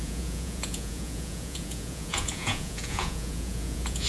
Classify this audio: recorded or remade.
remade